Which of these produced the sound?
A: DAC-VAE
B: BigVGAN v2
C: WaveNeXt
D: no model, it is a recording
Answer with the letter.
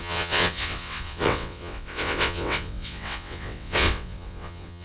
C